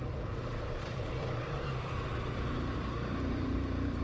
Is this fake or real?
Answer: fake